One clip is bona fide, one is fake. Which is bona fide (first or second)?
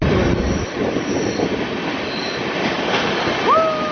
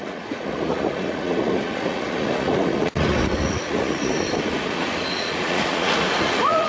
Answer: first